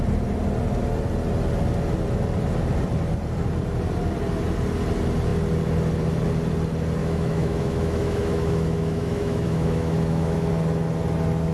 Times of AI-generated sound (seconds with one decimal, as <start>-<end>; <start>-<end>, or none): 7.0-10.5